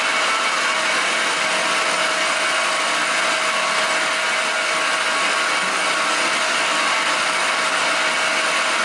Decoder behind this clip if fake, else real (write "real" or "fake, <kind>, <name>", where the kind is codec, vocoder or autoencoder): real